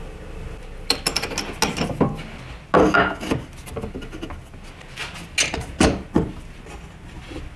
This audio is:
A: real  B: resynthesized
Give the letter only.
A